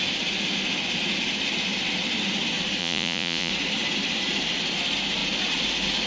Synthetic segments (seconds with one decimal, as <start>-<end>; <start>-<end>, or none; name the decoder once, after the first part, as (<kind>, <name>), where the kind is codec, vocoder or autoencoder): 2.8-3.5 (vocoder, Vocos)